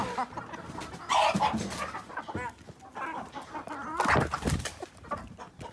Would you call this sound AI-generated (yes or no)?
no